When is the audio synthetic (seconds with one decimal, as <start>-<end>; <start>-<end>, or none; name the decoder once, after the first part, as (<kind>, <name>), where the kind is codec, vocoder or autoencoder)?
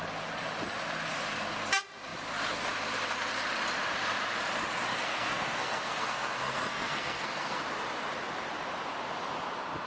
4.9-7.6 (codec, SNAC)